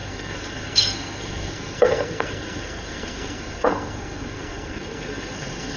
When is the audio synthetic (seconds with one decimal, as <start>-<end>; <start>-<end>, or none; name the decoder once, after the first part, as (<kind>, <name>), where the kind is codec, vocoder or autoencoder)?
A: 0.0-5.8 (codec, SNAC)